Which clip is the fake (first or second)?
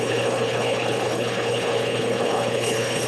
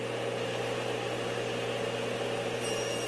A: first